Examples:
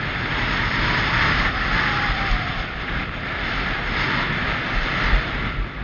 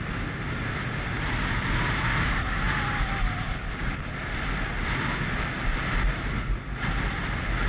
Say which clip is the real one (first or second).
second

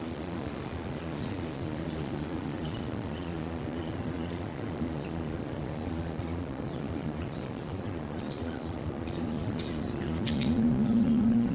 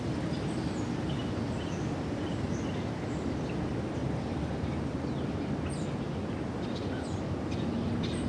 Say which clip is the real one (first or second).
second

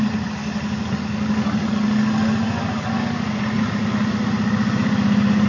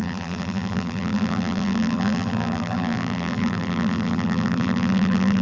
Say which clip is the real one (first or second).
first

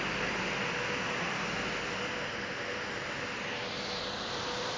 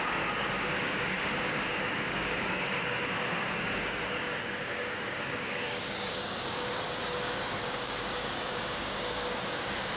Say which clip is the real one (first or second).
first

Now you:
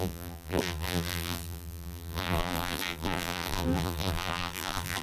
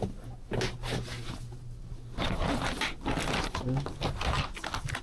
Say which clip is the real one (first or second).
second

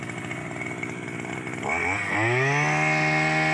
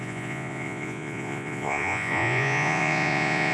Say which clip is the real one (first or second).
first